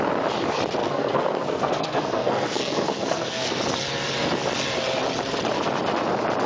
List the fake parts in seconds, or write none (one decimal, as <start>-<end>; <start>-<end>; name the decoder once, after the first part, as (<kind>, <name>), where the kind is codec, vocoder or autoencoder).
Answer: 0.8-3.6 (codec, SNAC)